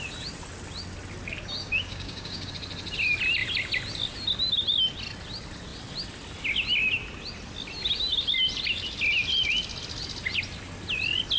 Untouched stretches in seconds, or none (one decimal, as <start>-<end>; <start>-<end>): 0.0-1.6; 2.5-11.4